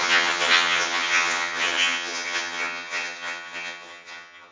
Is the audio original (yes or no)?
no